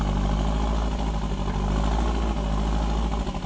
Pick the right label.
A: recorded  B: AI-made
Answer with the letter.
A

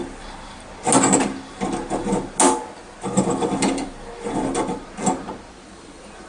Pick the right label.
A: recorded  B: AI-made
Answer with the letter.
A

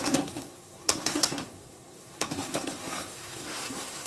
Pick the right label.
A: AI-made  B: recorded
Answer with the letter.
A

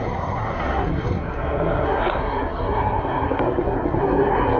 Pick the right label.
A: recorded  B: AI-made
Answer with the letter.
B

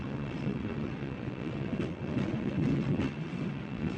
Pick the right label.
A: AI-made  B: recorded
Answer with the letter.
A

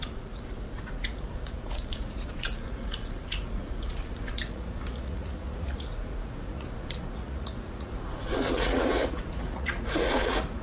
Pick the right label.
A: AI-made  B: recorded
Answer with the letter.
A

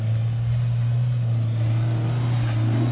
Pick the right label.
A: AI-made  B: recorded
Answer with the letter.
B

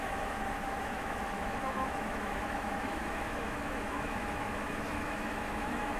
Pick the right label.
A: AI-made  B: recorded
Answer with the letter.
A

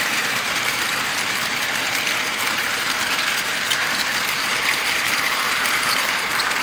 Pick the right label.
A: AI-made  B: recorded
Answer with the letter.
A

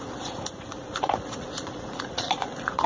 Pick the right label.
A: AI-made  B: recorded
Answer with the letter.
A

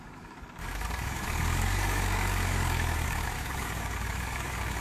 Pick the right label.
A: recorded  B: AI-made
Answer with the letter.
B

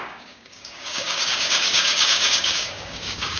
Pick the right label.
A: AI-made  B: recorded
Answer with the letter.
A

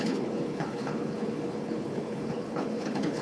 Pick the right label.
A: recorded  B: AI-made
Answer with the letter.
B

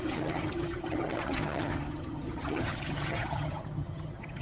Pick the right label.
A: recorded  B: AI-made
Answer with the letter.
B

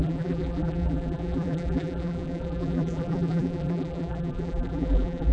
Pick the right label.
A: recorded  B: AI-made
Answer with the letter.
B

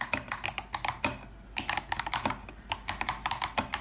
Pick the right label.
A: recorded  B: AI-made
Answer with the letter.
A